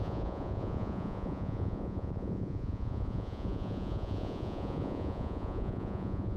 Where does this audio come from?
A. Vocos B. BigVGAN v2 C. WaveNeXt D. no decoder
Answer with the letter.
A